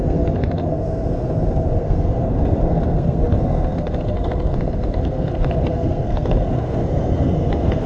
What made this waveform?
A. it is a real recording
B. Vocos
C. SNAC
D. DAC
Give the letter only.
C